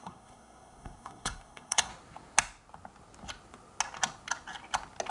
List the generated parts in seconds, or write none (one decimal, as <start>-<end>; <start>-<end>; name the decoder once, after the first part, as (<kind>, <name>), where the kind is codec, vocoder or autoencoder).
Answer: 0.0-1.9 (codec, SNAC)